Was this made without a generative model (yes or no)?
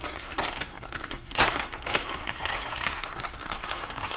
no